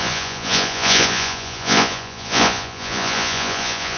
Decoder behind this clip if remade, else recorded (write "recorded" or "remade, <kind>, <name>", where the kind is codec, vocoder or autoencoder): remade, vocoder, Vocos